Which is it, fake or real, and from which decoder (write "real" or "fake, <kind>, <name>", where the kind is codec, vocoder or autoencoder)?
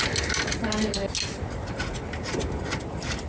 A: real